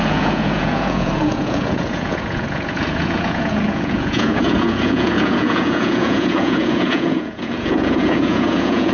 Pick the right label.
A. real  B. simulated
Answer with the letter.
B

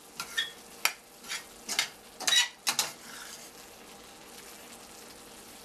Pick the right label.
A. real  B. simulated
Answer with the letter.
A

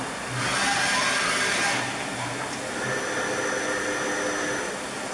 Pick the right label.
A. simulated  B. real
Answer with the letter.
B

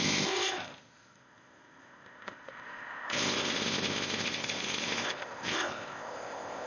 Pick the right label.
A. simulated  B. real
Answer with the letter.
A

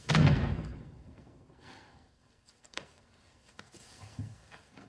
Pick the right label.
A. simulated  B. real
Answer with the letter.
A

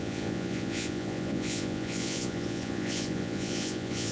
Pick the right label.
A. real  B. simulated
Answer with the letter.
B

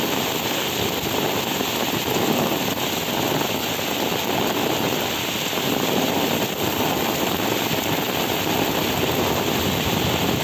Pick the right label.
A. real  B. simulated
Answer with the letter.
A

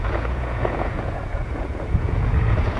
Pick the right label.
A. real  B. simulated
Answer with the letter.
B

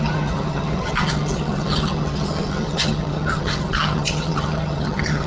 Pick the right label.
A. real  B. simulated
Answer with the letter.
B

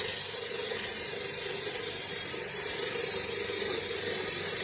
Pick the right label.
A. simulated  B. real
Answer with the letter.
A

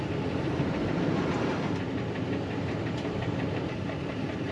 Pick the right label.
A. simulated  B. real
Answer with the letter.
A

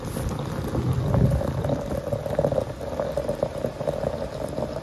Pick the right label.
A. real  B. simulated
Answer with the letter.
A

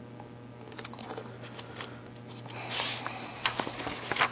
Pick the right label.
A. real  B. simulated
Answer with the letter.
A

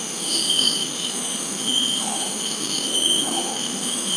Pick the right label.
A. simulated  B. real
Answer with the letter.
A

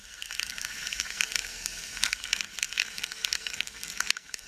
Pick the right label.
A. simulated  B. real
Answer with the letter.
A